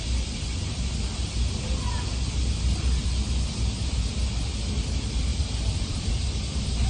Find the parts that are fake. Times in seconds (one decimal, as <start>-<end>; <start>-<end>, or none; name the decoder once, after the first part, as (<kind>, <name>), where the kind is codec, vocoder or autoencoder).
5.3-6.1 (vocoder, BigVGAN v2)